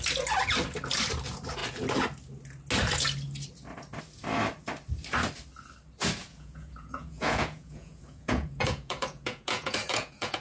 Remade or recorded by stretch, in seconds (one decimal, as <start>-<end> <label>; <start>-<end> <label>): 0.0-6.3 recorded; 6.3-10.4 remade